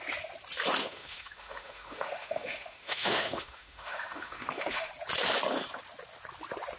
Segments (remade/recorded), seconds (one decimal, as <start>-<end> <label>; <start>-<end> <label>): 0.0-0.8 recorded; 0.8-4.9 remade; 4.9-6.8 recorded